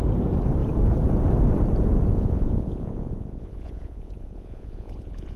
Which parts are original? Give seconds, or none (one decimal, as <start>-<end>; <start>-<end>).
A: 0.0-2.1